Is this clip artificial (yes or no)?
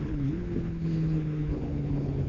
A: yes